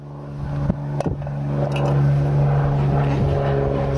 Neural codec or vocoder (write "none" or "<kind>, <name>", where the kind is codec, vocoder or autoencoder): none